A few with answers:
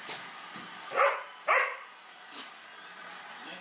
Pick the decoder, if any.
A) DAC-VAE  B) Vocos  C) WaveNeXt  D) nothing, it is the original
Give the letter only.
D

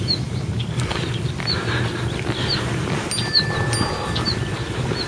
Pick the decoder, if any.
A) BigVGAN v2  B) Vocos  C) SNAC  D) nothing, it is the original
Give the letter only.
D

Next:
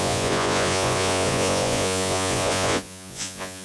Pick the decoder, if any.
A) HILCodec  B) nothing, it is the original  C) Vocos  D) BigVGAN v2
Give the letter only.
C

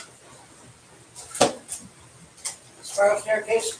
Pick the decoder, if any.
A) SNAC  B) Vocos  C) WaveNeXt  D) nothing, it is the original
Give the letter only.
D